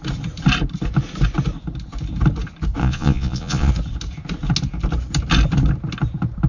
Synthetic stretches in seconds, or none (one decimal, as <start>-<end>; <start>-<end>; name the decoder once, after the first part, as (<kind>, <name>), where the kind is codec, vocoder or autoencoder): 2.8-3.7 (vocoder, Vocos)